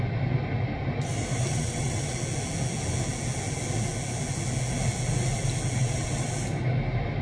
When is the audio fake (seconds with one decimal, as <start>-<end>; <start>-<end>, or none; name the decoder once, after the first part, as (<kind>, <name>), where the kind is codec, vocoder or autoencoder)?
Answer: 1.5-2.1 (vocoder, WaveNeXt); 5.8-6.3